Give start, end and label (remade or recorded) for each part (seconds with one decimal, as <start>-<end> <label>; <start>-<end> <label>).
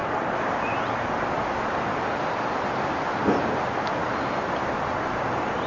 0.0-5.7 recorded